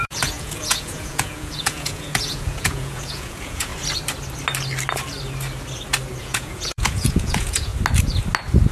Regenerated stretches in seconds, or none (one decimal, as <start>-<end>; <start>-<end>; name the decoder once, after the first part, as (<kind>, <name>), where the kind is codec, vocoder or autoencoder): 0.0-3.7 (vocoder, Vocos); 6.2-7.7